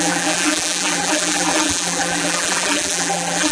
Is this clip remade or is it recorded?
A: remade